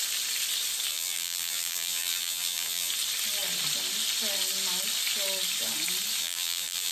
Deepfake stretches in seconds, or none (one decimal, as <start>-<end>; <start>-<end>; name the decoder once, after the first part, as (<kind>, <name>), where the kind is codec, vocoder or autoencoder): 0.9-2.9 (vocoder, BigVGAN v2); 6.2-6.9